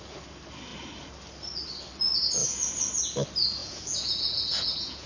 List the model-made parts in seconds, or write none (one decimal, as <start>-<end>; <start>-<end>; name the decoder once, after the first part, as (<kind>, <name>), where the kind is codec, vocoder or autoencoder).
3.6-5.1 (vocoder, Vocos)

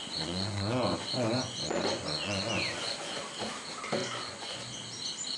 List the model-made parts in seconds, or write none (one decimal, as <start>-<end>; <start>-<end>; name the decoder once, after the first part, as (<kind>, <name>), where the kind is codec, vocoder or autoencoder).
0.0-3.2 (vocoder, Vocos); 4.0-4.6

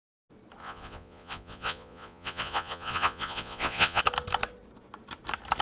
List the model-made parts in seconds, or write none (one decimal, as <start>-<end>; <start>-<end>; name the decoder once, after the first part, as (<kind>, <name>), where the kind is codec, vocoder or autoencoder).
0.6-4.0 (vocoder, Vocos)

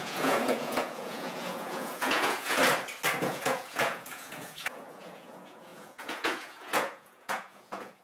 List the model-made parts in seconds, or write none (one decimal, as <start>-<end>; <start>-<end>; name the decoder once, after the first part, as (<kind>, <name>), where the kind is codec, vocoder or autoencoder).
0.0-2.6 (vocoder, Vocos); 3.2-8.0

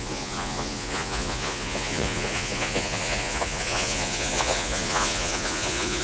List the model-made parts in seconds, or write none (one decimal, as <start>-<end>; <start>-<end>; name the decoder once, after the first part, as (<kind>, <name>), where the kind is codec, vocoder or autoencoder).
0.0-6.0 (vocoder, Vocos)

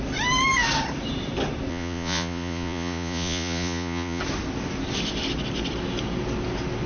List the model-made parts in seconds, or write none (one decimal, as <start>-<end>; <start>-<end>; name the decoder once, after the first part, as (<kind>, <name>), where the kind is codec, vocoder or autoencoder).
1.7-4.2 (vocoder, Vocos)